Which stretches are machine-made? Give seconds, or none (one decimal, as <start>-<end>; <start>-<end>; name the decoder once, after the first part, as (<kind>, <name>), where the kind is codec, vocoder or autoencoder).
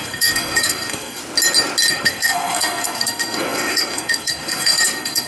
0.0-1.2 (codec, SNAC); 1.9-5.3